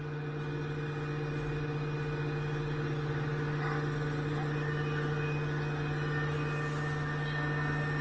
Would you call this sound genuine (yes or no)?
yes